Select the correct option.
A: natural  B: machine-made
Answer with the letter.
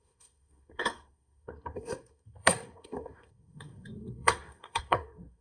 B